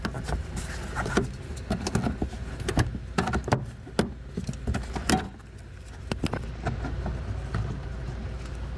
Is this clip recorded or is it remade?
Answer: recorded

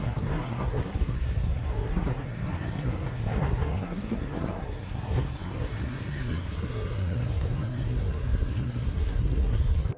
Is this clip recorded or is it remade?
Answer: remade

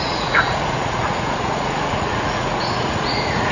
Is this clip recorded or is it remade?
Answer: remade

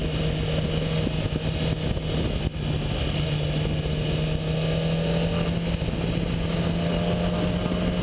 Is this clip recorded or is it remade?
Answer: recorded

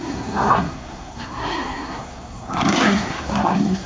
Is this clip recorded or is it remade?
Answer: remade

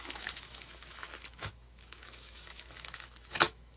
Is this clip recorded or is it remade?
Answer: remade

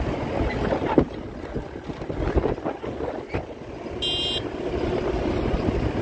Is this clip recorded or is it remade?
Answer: recorded